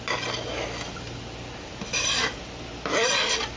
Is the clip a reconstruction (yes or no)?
no